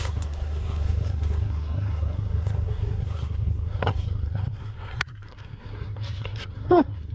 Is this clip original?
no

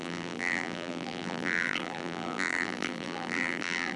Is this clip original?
no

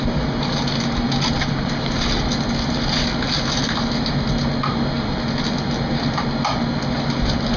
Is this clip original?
yes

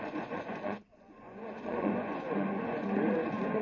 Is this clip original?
no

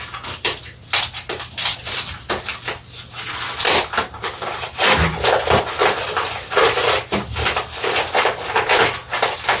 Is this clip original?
yes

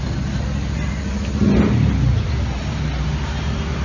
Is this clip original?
yes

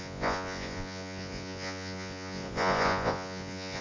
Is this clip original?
no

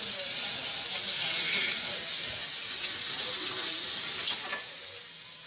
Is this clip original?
yes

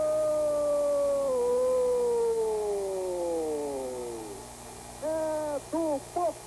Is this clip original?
yes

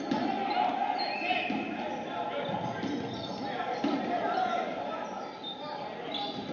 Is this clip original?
yes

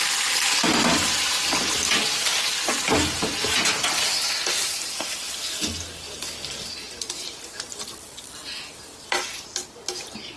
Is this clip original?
yes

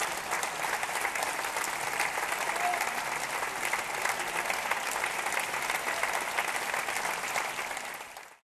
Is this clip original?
yes